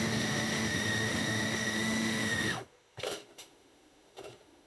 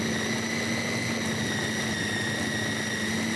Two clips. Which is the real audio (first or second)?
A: second